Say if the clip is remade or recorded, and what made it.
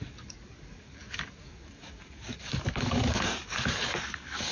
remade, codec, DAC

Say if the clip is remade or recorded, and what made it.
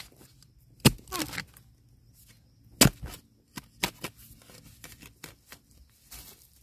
recorded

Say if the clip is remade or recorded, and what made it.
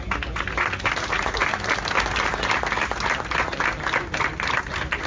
recorded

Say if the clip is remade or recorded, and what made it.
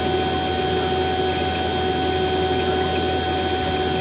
recorded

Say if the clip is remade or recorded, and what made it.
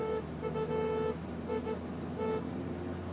recorded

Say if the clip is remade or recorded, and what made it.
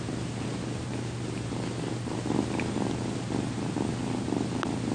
recorded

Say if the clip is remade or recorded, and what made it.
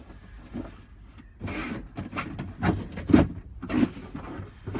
recorded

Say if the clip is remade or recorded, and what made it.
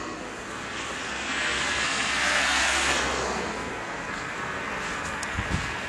remade, codec, SNAC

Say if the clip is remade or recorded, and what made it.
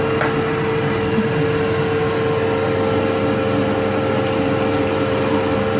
recorded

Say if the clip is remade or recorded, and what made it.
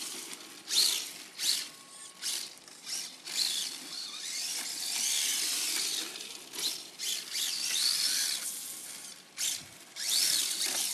recorded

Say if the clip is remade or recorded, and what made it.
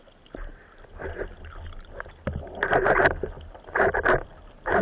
recorded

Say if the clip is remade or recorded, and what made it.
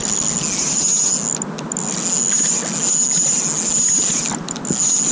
recorded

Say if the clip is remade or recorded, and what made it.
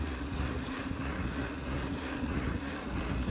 remade, vocoder, Vocos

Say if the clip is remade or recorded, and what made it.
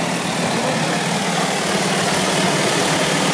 recorded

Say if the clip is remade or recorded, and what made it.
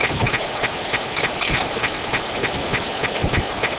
recorded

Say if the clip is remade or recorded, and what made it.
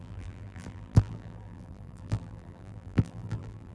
remade, vocoder, BigVGAN v2